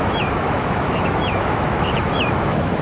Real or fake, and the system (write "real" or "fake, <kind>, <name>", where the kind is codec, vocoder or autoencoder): fake, autoencoder, DAC-VAE